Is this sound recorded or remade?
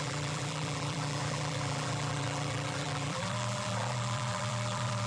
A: remade